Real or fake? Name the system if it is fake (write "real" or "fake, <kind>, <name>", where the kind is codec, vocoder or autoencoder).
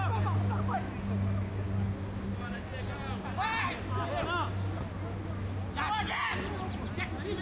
real